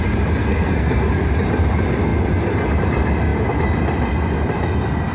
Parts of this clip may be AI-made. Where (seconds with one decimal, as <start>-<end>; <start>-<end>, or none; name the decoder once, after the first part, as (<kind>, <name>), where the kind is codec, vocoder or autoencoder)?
0.4-1.1 (codec, SNAC)